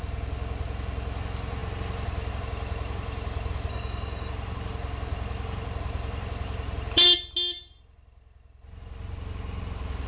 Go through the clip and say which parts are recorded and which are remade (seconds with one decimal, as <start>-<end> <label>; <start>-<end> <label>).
0.0-3.7 recorded; 3.7-4.3 remade; 4.3-10.1 recorded